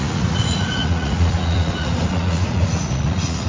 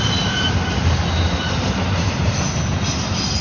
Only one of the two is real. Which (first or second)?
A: second